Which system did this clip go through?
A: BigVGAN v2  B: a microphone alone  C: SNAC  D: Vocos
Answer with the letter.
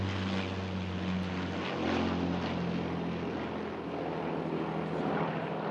B